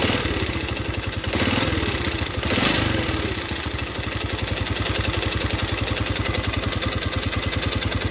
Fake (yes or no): no